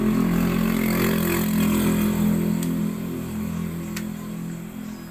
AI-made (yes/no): no